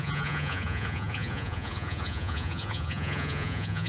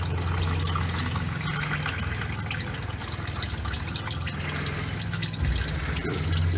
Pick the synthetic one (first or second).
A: first